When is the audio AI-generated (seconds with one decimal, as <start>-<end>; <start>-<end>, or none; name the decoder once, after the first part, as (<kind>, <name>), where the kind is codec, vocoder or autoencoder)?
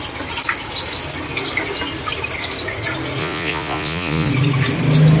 3.2-4.3 (vocoder, Vocos)